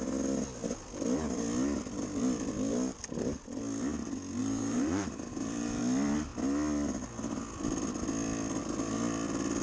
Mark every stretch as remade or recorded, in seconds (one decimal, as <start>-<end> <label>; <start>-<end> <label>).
0.0-4.4 recorded; 4.4-5.8 remade; 5.8-9.6 recorded